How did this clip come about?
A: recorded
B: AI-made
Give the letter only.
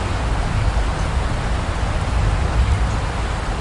A